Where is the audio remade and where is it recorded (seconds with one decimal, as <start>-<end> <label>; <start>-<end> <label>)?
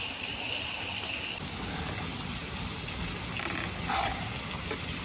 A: 0.0-5.0 recorded